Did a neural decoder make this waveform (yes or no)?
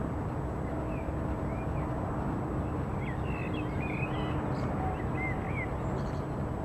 no